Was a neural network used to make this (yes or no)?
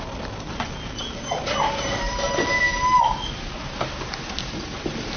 no